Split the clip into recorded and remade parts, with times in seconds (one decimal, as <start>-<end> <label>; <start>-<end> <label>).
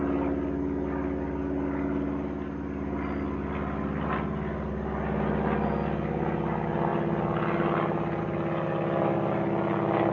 0.0-10.1 recorded